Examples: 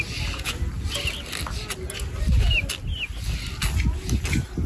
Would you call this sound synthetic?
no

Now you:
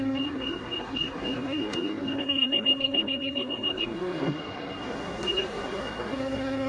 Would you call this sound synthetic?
yes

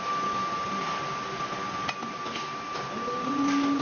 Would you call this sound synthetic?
no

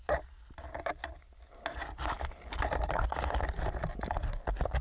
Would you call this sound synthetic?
no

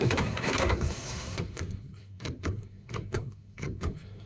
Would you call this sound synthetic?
yes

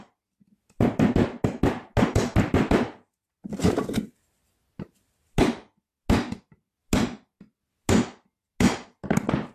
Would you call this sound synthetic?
no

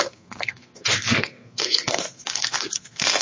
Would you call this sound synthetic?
yes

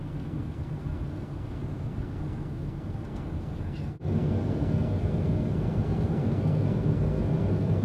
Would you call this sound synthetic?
yes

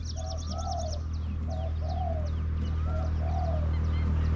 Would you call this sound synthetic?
no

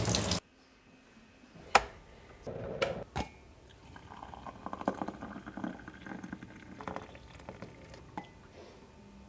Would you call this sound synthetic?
no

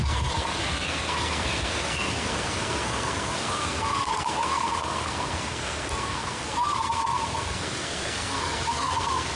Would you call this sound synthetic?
yes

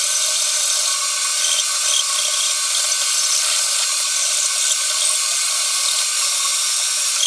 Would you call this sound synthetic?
no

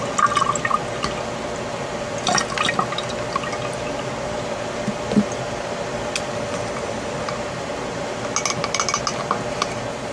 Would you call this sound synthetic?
no